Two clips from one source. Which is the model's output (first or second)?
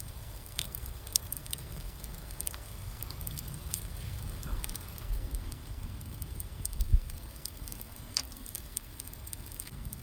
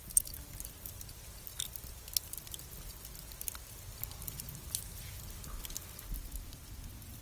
first